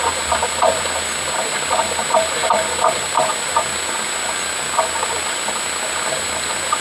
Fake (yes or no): no